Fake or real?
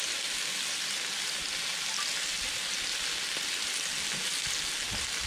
real